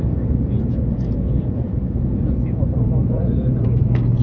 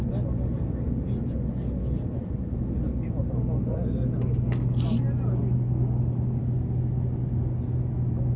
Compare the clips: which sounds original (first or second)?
second